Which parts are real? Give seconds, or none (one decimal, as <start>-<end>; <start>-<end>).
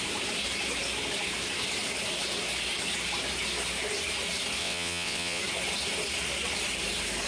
0.0-4.6; 5.4-7.3